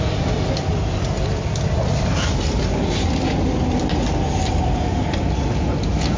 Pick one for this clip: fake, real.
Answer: real